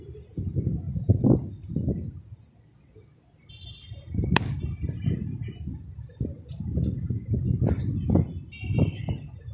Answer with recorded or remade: recorded